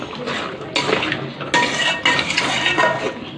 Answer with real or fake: real